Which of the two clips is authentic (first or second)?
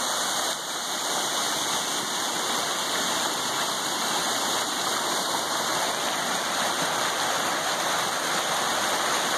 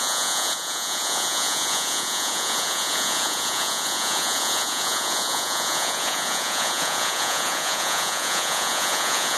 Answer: first